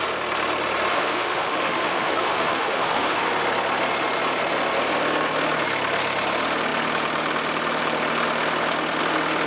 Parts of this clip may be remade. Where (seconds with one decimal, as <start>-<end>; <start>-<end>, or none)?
0.9-3.3